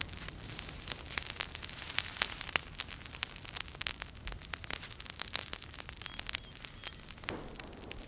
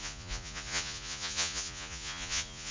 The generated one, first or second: second